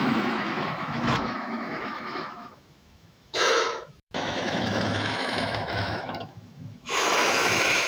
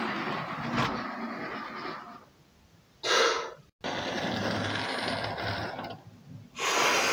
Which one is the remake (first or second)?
first